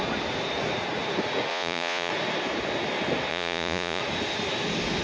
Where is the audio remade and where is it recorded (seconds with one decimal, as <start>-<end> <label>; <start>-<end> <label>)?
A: 0.0-1.5 recorded; 1.5-2.1 remade; 2.1-3.3 recorded; 3.3-4.0 remade; 4.0-5.0 recorded